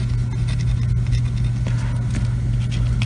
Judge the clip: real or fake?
real